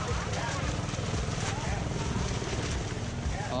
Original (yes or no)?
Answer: yes